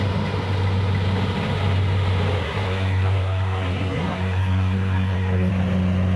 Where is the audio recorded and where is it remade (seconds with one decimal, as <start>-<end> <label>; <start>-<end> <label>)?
0.0-2.4 recorded; 2.4-5.5 remade; 5.5-6.2 recorded